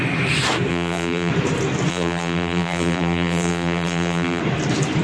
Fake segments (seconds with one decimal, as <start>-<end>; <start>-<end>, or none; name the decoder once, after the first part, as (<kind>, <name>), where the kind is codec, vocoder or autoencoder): 0.7-1.3 (vocoder, BigVGAN v2); 1.9-4.4

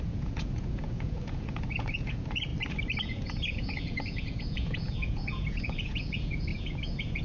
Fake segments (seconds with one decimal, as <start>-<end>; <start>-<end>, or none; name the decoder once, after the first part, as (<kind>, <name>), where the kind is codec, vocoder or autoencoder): 0.0-2.5 (vocoder, Vocos); 3.0-7.2